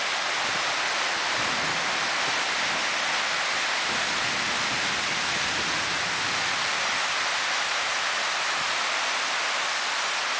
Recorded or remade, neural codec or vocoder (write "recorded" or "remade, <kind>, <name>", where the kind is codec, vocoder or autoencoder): recorded